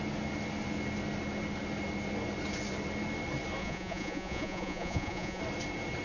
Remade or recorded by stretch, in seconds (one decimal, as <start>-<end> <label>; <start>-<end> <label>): 0.0-3.6 recorded; 3.6-5.4 remade; 5.4-6.0 recorded